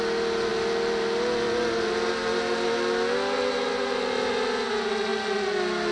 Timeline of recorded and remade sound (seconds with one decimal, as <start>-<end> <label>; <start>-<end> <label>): 0.0-5.9 recorded